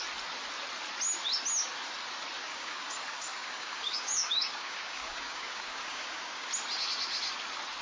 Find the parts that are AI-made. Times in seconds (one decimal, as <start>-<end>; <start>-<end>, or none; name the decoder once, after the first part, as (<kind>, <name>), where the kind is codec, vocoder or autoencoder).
2.4-6.5 (codec, DAC)